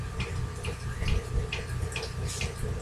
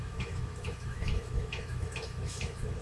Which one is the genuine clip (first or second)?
first